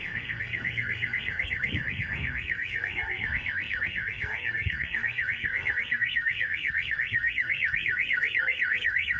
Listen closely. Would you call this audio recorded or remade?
remade